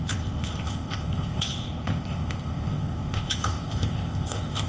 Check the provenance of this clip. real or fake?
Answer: fake